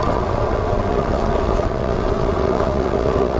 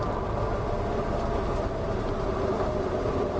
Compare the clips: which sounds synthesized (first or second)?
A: first